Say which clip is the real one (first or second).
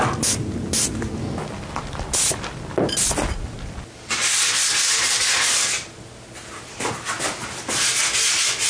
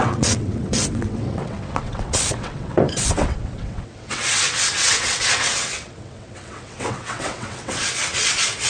first